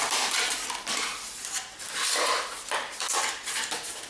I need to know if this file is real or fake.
fake